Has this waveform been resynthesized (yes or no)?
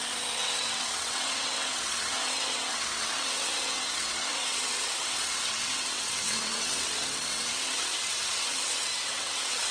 yes